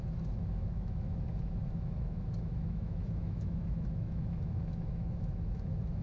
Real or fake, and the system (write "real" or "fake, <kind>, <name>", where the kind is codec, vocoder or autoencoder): fake, autoencoder, DAC-VAE